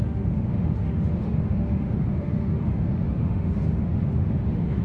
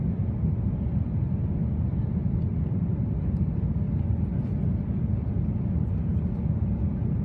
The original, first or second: second